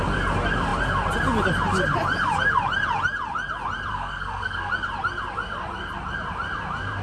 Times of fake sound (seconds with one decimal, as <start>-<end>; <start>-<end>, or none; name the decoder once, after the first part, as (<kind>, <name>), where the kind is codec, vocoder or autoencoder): 3.9-4.7 (codec, SNAC)